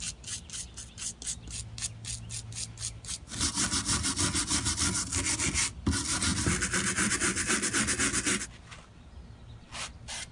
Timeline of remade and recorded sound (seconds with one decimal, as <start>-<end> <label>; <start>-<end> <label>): 0.0-10.3 recorded

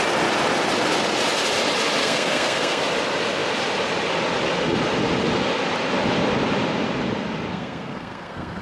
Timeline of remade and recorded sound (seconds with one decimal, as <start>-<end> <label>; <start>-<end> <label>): 0.0-2.0 recorded; 2.0-2.8 remade; 2.8-7.5 recorded; 7.5-8.6 remade

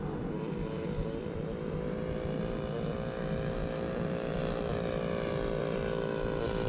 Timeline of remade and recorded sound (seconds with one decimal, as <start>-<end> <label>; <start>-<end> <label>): 0.0-6.7 recorded